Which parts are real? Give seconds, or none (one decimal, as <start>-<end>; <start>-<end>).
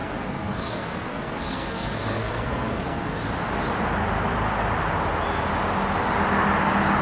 3.2-7.0